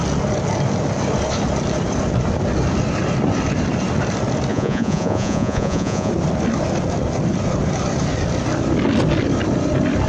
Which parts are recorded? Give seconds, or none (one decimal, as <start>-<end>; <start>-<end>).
0.0-4.5; 6.1-10.1